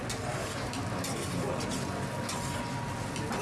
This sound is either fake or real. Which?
real